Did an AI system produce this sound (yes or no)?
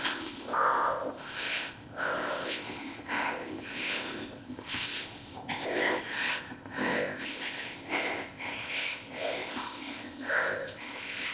yes